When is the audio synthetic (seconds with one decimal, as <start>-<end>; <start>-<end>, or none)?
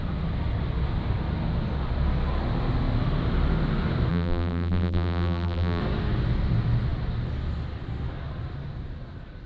4.1-5.8